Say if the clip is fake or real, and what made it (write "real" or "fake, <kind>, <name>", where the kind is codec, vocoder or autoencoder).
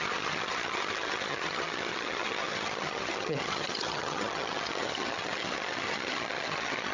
fake, vocoder, HiFi-GAN